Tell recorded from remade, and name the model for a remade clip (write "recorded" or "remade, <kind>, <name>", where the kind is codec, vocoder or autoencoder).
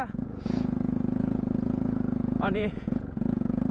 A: remade, vocoder, Vocos